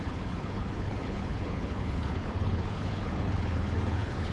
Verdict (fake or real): fake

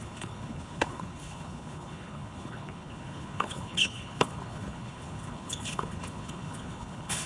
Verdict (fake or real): fake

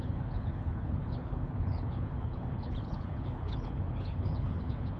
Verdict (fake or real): fake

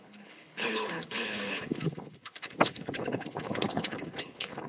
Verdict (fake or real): fake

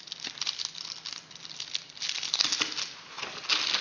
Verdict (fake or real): real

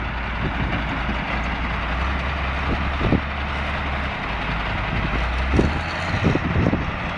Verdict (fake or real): real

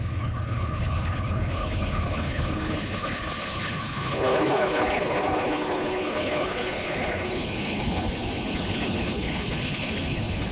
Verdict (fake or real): fake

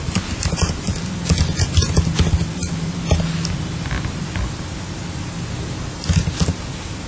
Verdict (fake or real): real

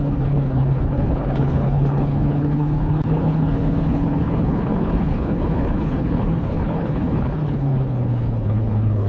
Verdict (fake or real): fake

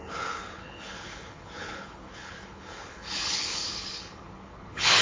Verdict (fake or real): fake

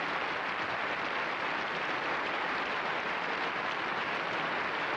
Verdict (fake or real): real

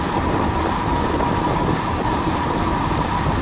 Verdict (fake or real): real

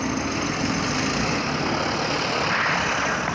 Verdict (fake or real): real